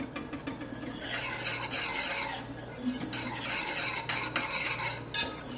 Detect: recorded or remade recorded